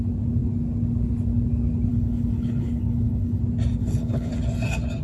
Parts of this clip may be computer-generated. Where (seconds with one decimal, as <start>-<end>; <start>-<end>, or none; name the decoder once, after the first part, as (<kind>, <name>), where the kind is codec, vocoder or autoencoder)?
1.9-3.4 (codec, HILCodec); 3.8-4.3